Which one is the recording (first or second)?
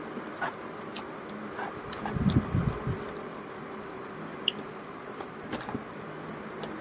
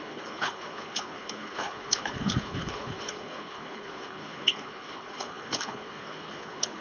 first